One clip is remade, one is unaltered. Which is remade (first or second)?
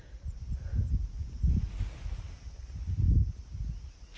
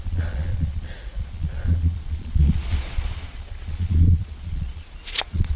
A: second